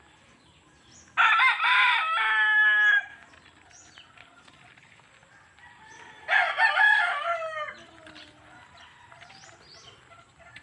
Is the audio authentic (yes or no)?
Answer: yes